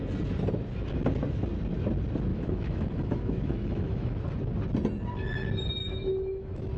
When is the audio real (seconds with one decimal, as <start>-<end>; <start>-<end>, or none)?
0.0-2.3; 4.2-5.8